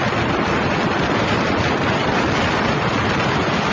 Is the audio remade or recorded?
recorded